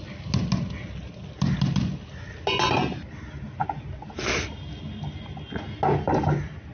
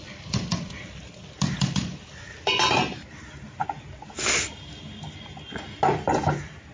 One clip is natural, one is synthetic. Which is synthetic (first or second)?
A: second